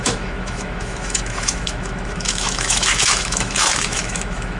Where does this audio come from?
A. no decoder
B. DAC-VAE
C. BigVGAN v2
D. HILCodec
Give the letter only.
B